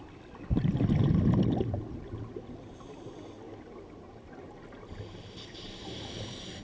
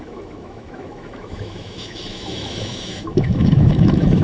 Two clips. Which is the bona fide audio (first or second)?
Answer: first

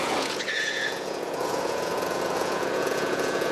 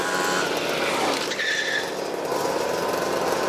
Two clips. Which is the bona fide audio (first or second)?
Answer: second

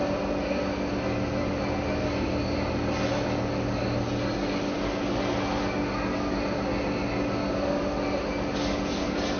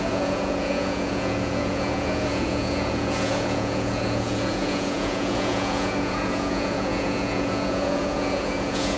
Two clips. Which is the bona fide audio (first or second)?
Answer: first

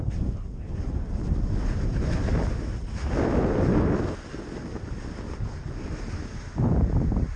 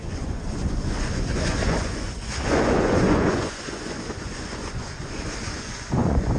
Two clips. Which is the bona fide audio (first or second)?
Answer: first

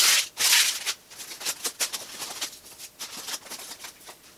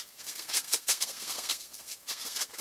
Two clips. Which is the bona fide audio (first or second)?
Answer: first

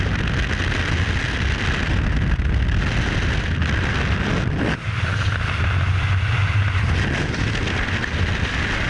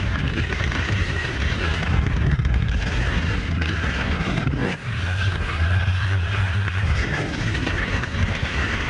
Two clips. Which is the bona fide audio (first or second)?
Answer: first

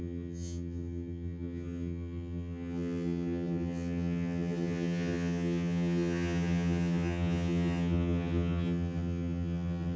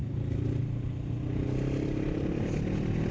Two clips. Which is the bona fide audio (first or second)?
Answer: second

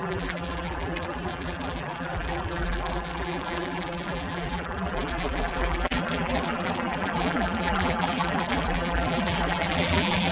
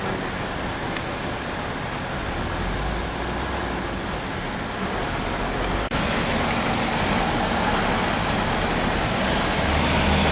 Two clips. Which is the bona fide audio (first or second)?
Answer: second